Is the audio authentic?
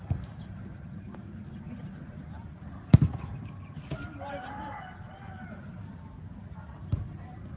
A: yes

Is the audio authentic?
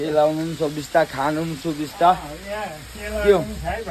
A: yes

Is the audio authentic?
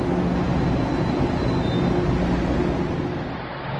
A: yes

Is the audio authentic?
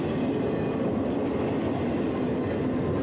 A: yes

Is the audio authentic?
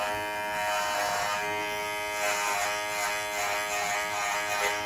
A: yes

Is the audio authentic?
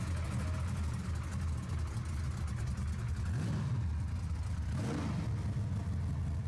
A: yes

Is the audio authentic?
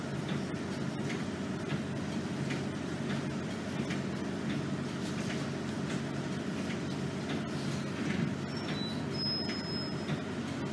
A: yes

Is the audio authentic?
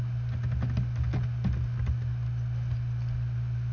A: yes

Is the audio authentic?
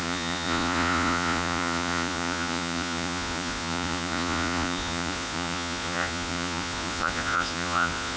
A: no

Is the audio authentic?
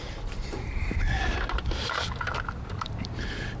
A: no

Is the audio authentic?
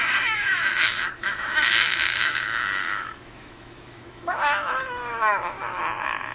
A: no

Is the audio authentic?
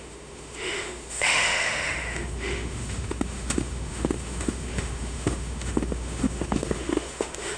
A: no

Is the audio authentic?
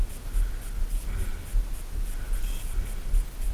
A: yes